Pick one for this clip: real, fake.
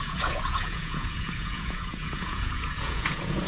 fake